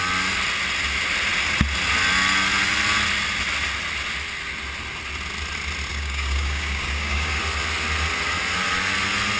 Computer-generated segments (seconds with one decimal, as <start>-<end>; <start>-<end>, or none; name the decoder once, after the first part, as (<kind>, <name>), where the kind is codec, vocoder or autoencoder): 5.9-7.4 (codec, DAC)